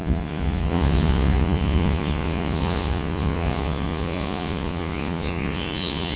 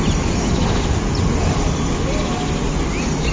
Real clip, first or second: second